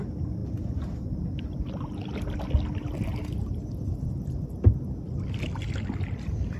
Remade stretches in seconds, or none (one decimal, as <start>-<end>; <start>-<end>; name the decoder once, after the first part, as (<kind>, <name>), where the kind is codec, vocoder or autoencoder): none